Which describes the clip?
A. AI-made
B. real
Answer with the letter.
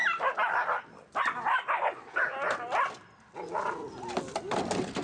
B